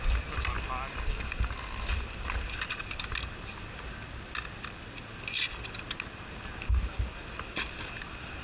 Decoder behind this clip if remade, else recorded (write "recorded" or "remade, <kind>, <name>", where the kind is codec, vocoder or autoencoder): recorded